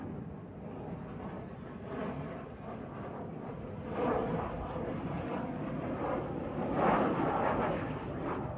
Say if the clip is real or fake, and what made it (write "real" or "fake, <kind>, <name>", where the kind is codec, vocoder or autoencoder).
real